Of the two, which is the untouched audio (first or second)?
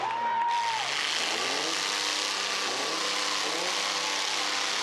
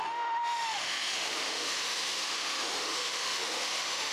first